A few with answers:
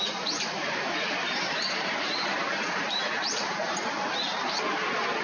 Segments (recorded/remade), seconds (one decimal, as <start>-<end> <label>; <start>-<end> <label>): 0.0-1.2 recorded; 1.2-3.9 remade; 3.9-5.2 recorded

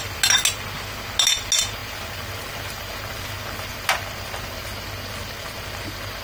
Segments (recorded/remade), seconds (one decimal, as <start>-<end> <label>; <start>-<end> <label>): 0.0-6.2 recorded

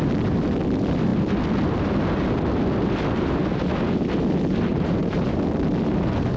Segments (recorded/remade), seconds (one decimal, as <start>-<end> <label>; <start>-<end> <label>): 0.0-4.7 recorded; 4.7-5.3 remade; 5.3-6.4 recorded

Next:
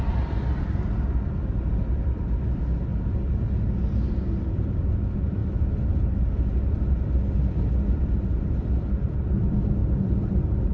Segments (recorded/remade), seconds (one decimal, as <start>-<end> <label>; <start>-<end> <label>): 0.0-2.9 remade; 2.9-4.4 recorded; 4.4-5.4 remade; 5.4-8.4 recorded; 8.4-9.8 remade; 9.8-10.7 recorded

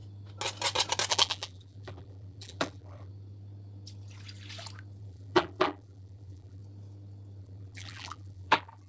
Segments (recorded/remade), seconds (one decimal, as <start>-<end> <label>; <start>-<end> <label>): 0.0-1.1 recorded; 1.1-3.1 remade; 3.1-5.0 recorded; 5.0-6.6 remade; 6.6-7.4 recorded; 7.4-8.9 remade

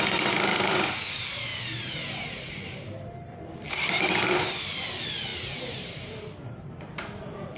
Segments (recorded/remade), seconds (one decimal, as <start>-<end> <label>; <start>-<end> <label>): 0.0-1.5 remade; 1.5-2.3 recorded; 2.3-7.6 remade

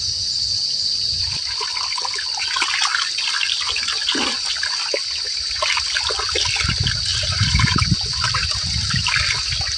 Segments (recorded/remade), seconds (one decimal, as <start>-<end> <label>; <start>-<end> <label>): 0.0-7.1 recorded; 7.1-8.6 remade; 8.6-9.8 recorded

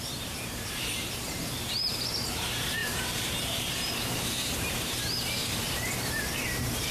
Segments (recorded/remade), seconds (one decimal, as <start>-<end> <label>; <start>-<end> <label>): 0.0-6.9 remade